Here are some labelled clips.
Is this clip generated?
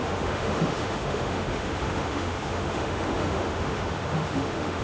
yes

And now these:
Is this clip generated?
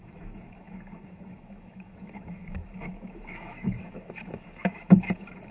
yes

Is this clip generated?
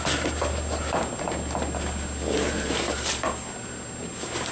no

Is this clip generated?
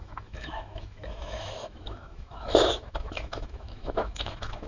yes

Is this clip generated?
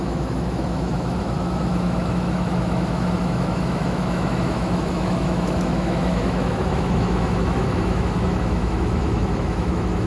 yes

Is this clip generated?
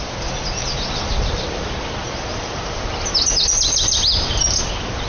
no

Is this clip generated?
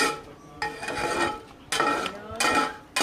no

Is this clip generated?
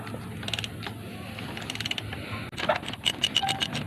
no